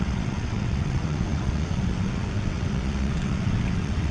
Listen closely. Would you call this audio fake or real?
fake